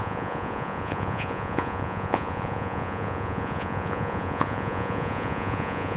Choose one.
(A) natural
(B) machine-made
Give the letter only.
B